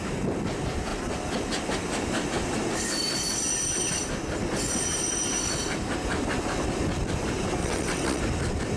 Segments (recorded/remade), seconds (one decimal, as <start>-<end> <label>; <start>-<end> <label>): 0.0-7.6 recorded; 7.6-8.2 remade; 8.2-8.8 recorded